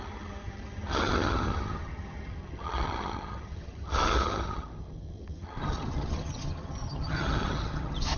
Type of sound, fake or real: fake